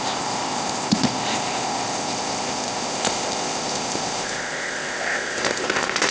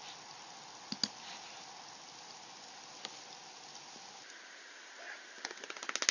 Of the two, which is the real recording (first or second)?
second